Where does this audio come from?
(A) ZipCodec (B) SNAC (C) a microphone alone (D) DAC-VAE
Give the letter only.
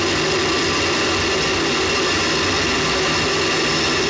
C